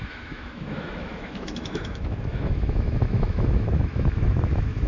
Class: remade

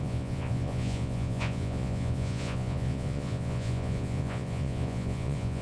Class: remade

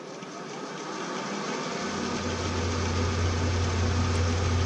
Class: recorded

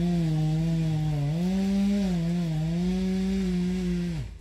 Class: recorded